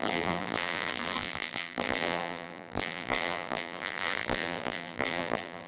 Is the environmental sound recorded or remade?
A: remade